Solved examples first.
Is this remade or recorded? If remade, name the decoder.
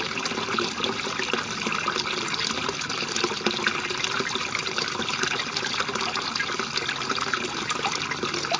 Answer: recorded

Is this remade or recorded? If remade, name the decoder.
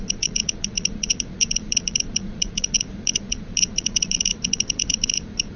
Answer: remade, vocoder, Vocos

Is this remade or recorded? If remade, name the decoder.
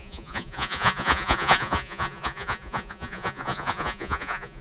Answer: remade, vocoder, Vocos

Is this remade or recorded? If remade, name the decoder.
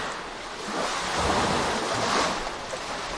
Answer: recorded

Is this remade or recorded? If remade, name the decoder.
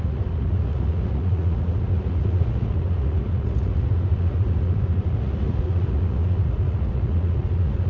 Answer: remade, vocoder, Vocos